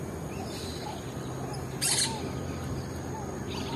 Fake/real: real